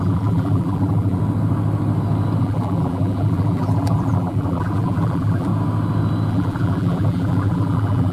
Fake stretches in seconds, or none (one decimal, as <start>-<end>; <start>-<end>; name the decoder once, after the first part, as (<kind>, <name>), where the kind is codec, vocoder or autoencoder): 0.0-1.2 (vocoder, BigVGAN v2); 2.4-5.5; 6.3-8.1